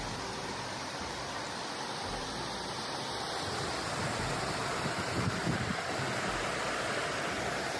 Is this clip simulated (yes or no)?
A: no